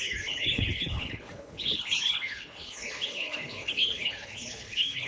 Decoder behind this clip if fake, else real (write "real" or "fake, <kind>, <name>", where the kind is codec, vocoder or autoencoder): fake, codec, HILCodec